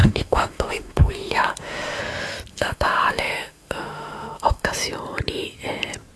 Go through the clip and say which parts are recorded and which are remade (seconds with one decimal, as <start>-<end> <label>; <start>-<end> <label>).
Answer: 0.0-2.0 remade; 2.0-2.5 recorded; 2.5-4.7 remade; 4.7-6.2 recorded